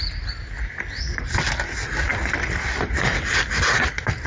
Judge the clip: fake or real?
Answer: real